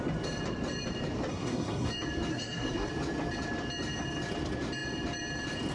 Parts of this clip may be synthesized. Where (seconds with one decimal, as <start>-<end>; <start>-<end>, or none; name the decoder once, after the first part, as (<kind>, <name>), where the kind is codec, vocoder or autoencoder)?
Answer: 1.3-1.9 (codec, SNAC); 2.3-2.9